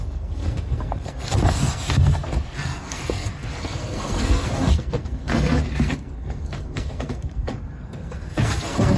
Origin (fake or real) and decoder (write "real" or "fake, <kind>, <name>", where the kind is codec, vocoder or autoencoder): fake, codec, SNAC